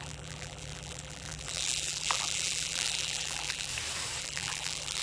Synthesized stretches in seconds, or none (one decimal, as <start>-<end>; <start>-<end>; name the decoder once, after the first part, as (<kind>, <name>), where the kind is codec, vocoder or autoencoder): 0.0-3.7 (vocoder, BigVGAN v2); 4.2-5.0